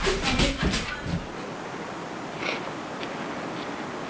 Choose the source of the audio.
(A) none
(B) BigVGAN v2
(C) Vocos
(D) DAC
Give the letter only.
A